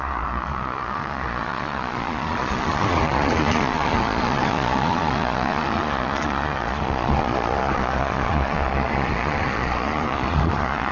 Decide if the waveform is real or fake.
fake